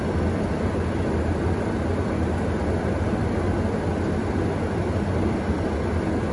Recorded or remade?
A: recorded